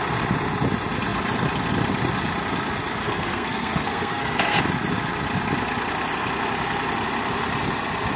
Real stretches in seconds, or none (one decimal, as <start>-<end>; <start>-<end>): 0.0-3.0; 4.6-8.2